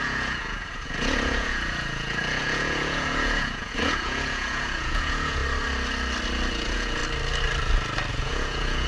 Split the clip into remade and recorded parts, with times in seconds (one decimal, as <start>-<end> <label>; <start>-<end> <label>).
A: 0.0-5.4 remade; 5.4-6.5 recorded; 6.5-7.0 remade; 7.0-8.1 recorded; 8.1-8.9 remade